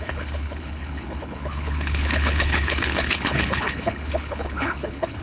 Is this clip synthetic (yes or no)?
yes